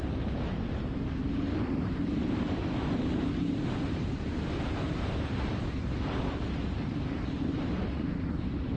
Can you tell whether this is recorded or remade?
recorded